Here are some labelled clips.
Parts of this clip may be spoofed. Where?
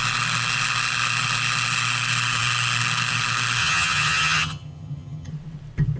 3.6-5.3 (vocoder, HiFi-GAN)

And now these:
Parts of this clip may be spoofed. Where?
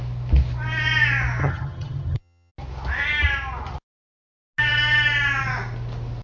1.4-2.5 (vocoder, HiFi-GAN)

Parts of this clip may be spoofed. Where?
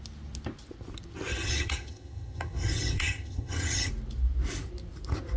1.3-3.9 (vocoder, HiFi-GAN)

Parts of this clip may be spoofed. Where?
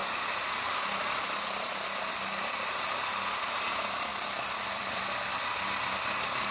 none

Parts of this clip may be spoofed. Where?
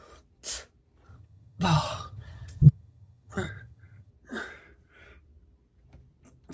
1.1-4.1 (vocoder, HiFi-GAN)